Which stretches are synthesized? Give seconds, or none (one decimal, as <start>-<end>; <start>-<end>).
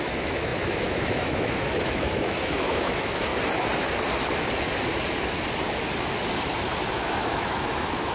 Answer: 0.0-3.3; 6.9-8.1